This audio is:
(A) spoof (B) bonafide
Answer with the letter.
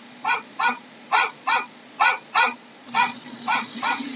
A